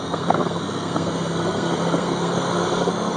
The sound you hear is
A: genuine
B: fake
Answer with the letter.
B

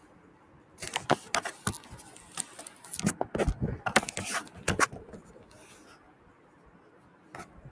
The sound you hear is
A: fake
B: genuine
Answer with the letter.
B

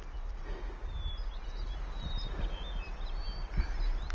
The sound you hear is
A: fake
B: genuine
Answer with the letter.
B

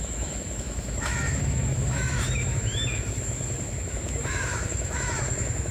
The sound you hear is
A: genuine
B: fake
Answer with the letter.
B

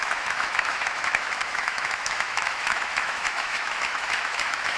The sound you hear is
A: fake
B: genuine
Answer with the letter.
A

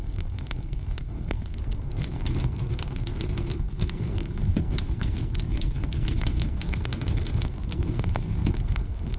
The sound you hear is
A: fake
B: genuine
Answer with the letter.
A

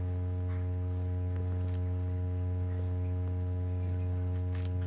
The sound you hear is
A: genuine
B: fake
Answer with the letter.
A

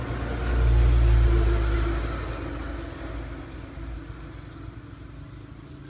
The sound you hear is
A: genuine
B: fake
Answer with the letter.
A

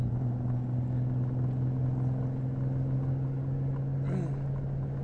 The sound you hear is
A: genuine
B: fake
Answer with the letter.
A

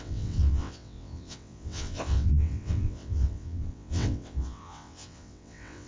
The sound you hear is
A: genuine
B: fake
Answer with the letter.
B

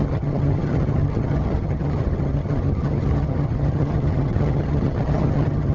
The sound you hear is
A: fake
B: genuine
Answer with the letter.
A